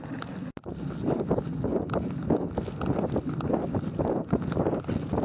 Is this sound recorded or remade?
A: recorded